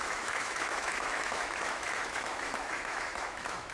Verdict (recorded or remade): remade